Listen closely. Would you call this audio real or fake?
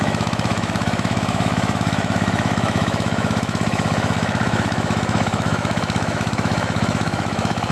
fake